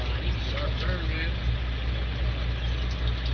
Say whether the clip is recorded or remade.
recorded